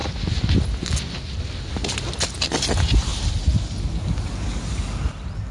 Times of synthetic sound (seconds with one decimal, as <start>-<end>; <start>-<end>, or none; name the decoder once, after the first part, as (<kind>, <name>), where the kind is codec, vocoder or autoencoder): none